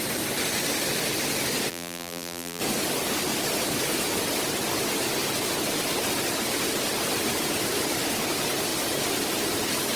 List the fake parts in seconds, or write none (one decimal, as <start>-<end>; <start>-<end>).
1.7-2.6